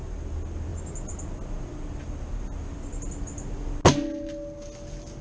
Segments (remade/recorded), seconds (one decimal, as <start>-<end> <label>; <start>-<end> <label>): 0.0-5.2 recorded